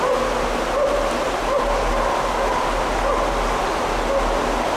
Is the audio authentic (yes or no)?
yes